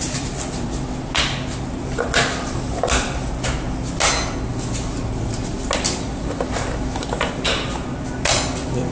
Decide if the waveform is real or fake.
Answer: real